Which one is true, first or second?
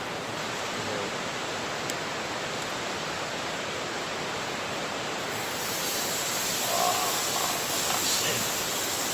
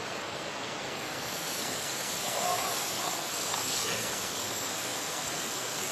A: first